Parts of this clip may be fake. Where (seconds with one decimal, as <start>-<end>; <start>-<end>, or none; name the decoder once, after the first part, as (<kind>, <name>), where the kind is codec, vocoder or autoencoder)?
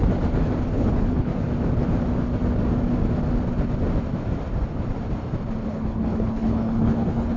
0.7-1.3 (codec, HILCodec); 5.7-7.4